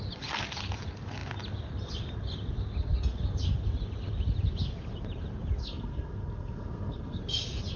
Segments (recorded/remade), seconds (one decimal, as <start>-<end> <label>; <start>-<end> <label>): 0.0-5.6 recorded; 5.6-7.2 remade; 7.2-7.8 recorded